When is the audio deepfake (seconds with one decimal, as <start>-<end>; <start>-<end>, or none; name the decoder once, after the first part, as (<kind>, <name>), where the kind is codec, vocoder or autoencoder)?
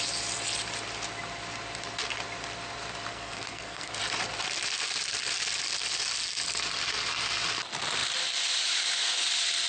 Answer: 3.1-4.0 (codec, SNAC)